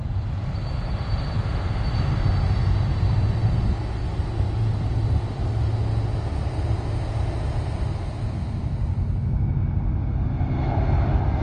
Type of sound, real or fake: real